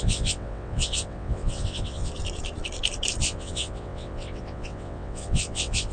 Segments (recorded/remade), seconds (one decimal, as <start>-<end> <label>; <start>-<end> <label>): 0.0-2.1 remade; 2.1-3.2 recorded; 3.2-5.9 remade

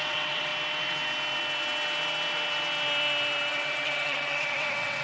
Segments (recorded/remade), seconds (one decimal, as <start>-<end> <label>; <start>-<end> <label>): 0.0-0.5 remade; 0.5-3.5 recorded; 3.5-5.0 remade

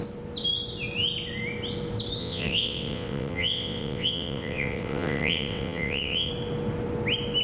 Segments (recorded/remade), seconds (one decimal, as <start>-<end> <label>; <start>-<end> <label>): 0.0-2.2 recorded; 2.2-6.3 remade; 6.3-7.4 recorded